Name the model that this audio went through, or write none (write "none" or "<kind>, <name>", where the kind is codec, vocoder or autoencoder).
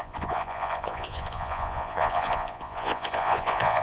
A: vocoder, Vocos